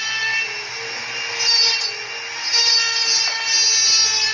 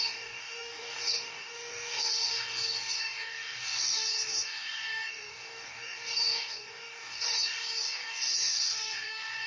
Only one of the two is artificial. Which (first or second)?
second